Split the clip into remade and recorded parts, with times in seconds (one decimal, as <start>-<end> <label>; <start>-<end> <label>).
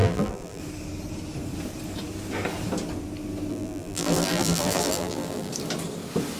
0.0-0.6 remade; 0.6-3.5 recorded; 3.5-5.5 remade; 5.5-6.4 recorded